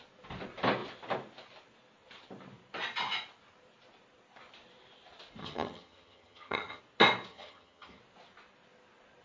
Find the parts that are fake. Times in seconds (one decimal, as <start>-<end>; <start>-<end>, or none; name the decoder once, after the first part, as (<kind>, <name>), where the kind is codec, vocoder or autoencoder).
5.4-6.8 (vocoder, HiFi-GAN); 7.3-8.0